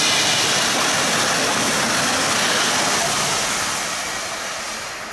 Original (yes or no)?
yes